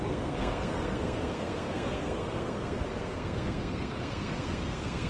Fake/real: fake